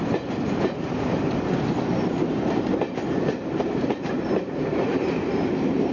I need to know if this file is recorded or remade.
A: remade